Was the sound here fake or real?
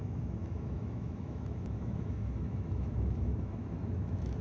fake